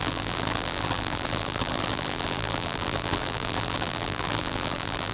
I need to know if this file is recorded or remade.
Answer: remade